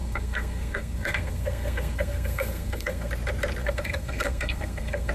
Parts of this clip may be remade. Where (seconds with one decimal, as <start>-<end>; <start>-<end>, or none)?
0.0-3.1; 3.6-5.1